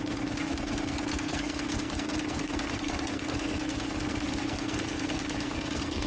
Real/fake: fake